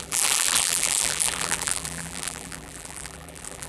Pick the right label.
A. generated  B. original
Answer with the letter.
A